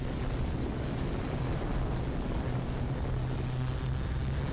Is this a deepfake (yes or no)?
no